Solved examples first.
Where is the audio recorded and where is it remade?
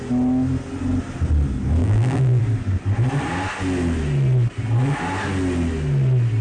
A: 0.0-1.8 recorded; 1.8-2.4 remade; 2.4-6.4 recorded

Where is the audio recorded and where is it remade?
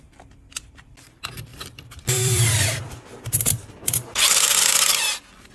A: 0.0-1.5 recorded; 1.5-4.6 remade; 4.6-5.5 recorded